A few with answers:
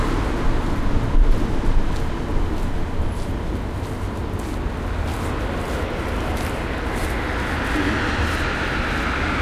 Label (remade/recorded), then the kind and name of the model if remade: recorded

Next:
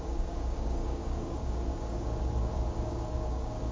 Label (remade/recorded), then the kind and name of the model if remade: remade, codec, DAC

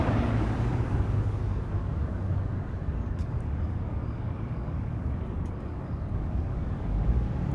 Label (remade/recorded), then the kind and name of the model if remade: remade, codec, DAC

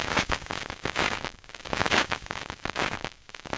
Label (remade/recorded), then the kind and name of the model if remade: remade, codec, DAC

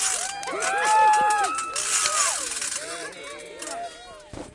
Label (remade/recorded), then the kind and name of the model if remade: recorded